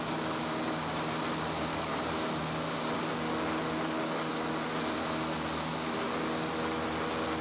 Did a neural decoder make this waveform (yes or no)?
no